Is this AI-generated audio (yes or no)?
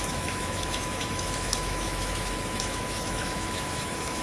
yes